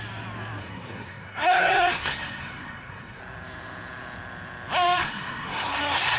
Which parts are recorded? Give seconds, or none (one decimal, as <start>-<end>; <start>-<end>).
0.0-0.6; 3.2-5.0